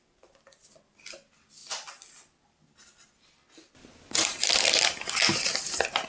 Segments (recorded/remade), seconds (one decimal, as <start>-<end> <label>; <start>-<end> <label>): 0.0-6.1 recorded